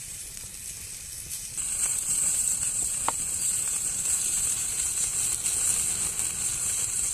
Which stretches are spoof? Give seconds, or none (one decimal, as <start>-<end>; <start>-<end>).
0.0-0.5; 1.7-5.1; 6.6-7.1

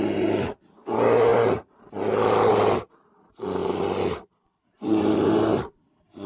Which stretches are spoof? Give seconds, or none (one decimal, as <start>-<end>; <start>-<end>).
5.5-6.3